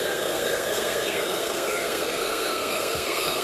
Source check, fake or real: fake